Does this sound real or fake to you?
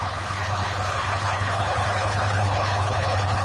fake